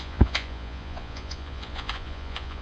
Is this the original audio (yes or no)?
no